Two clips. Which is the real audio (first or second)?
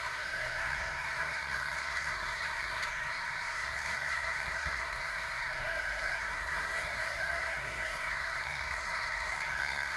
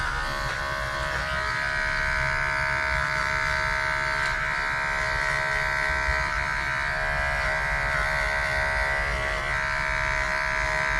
second